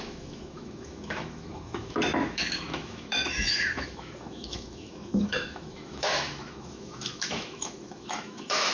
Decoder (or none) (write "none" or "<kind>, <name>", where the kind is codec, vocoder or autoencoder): autoencoder, DAC-VAE